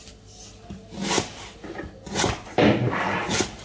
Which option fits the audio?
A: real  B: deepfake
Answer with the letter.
A